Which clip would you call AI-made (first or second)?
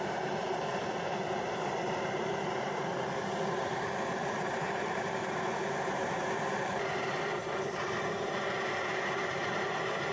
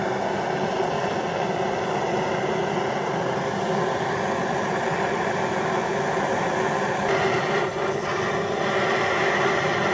first